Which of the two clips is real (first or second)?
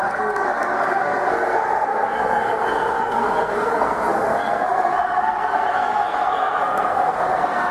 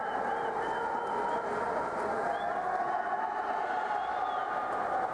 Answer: second